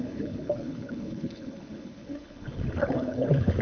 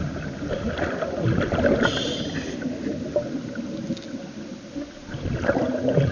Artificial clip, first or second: first